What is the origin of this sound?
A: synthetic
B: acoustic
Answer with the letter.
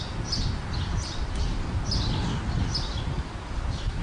B